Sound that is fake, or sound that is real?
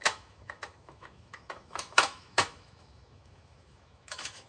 fake